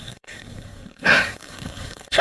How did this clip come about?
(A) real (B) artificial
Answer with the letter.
B